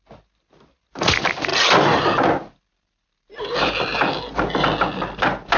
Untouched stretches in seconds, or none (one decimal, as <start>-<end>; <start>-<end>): 0.0-5.6